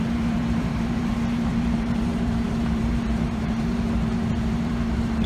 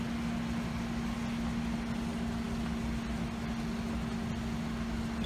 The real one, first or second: second